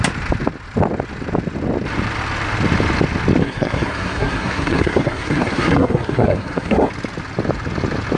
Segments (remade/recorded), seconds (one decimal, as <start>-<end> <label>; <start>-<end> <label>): 0.0-3.4 recorded; 3.4-6.9 remade; 6.9-8.2 recorded